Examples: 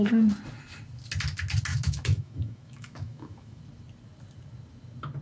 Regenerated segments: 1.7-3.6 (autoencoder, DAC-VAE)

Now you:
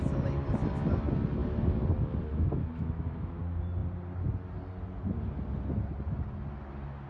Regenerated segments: 2.3-3.4 (autoencoder, DAC-VAE)